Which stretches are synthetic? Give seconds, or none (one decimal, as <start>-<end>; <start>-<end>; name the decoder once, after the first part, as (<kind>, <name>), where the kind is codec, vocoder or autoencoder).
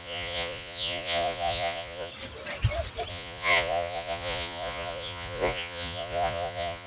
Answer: 0.0-2.1 (vocoder, Vocos); 3.1-6.9